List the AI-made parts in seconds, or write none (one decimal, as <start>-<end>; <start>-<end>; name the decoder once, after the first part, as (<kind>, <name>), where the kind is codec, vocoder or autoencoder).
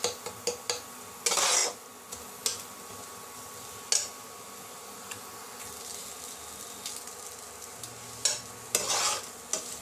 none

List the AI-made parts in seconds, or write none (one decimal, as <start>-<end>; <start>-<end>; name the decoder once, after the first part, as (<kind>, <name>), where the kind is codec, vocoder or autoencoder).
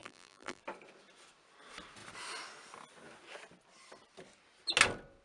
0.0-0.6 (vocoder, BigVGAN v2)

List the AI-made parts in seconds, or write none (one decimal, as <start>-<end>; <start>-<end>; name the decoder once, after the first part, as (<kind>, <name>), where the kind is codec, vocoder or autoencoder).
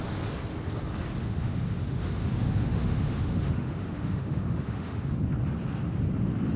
1.2-5.2 (autoencoder, DAC-VAE)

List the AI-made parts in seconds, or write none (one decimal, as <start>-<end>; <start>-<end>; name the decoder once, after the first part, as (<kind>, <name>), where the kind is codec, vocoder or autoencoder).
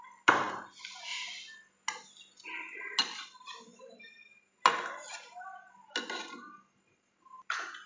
none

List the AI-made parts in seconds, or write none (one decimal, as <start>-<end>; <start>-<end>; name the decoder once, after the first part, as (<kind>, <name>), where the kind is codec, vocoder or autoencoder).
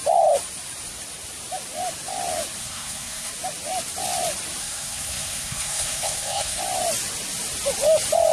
2.6-3.3 (codec, SNAC); 4.6-6.6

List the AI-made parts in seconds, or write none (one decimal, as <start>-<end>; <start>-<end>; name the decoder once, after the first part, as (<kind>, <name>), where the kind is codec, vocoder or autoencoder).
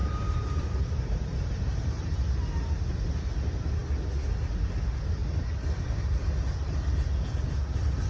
0.0-2.0 (vocoder, BigVGAN v2); 5.2-6.3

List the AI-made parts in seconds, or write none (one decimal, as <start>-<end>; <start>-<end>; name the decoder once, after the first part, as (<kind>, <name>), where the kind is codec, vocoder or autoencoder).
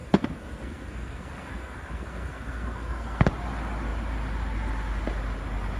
0.0-3.3 (codec, SNAC)